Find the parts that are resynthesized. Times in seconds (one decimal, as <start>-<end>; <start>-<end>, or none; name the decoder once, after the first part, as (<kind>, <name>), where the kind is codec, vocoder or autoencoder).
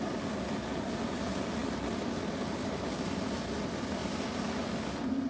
none